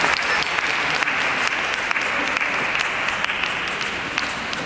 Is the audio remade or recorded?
recorded